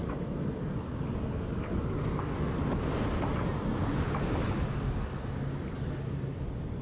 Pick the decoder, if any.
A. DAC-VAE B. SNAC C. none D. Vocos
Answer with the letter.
C